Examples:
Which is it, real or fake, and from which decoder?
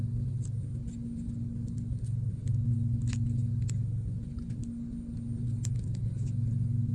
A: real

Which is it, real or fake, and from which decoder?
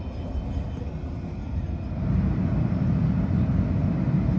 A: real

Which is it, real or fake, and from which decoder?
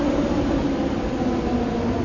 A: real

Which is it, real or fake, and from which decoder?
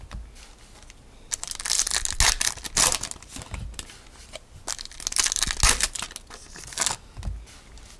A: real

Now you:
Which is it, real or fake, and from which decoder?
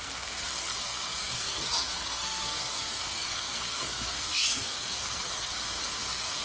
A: fake, codec, SNAC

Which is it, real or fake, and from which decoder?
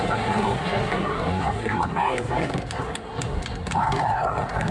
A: fake, codec, SNAC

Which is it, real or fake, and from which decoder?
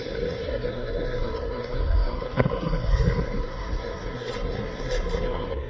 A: fake, codec, SNAC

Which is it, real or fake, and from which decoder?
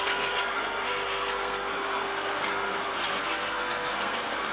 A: fake, codec, SNAC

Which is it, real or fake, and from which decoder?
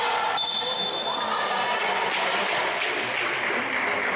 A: real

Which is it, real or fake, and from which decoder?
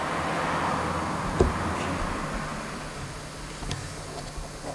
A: real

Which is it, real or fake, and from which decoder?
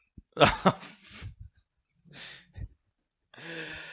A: real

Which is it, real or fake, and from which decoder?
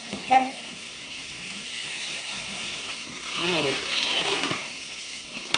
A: fake, codec, SNAC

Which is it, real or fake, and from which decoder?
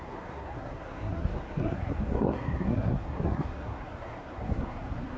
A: fake, codec, SNAC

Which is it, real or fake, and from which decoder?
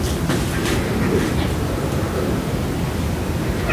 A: real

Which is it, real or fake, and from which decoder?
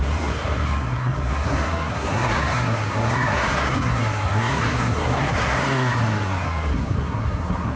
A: fake, codec, SNAC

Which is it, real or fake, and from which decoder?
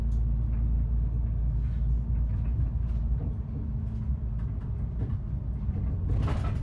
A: real